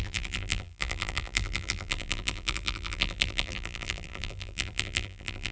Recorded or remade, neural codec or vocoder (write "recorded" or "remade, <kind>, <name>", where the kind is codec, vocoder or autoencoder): remade, vocoder, BigVGAN v2